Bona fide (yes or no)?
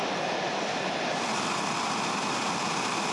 yes